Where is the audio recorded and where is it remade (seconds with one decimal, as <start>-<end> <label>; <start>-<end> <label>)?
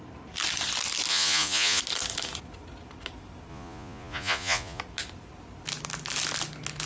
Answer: 0.0-1.1 recorded; 1.1-1.8 remade; 1.8-3.5 recorded; 3.5-4.8 remade; 4.8-6.9 recorded